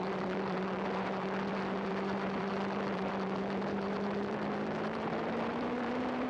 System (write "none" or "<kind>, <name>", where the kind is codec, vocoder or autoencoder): vocoder, BigVGAN v2